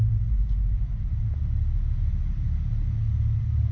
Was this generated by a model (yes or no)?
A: no